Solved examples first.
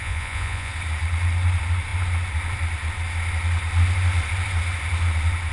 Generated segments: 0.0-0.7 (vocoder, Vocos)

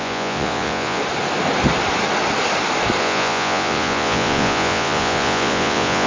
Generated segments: 0.0-1.0 (vocoder, Vocos); 3.0-6.1

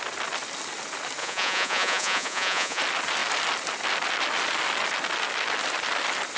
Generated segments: 1.2-2.8 (vocoder, Vocos)

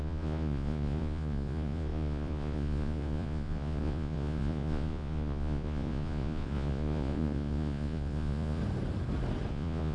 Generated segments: 0.0-8.6 (vocoder, Vocos); 9.5-9.9